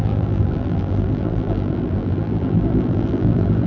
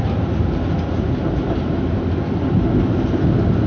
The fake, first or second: first